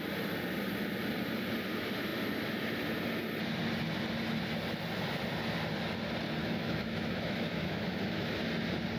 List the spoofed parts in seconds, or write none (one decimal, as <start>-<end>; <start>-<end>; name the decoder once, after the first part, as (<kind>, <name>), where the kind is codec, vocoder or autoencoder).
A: 6.4-8.5 (autoencoder, DAC-VAE)